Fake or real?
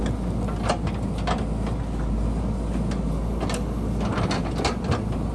real